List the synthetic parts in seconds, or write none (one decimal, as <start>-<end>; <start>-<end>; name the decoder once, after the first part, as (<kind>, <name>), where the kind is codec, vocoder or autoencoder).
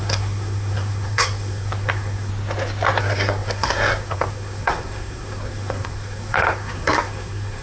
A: 0.0-2.3 (codec, SNAC); 3.0-7.6